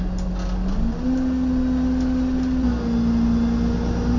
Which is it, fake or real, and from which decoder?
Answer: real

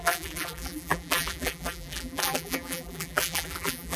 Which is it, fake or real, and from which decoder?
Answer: fake, vocoder, BigVGAN v2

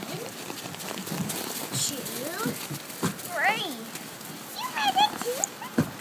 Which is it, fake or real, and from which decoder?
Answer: real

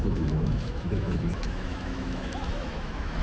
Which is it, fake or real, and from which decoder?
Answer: fake, autoencoder, DAC-VAE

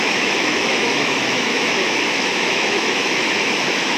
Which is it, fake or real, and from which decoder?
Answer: fake, autoencoder, DAC-VAE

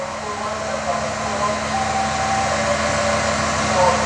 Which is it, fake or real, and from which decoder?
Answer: real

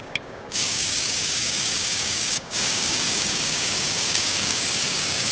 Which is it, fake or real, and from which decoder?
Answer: fake, codec, DAC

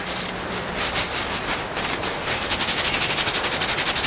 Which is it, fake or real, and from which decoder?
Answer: real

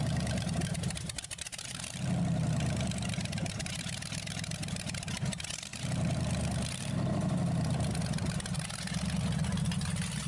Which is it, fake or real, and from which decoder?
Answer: real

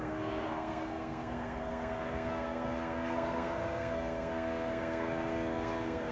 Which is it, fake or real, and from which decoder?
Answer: fake, codec, SNAC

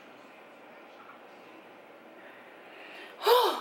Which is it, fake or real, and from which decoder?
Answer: real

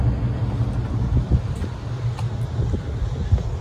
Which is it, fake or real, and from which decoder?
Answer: real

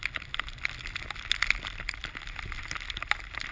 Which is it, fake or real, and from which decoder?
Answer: real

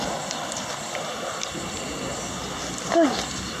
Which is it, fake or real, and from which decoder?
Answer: real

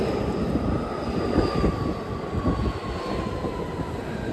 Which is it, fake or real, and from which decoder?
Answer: real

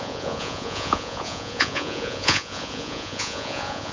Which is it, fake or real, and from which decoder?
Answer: fake, vocoder, Vocos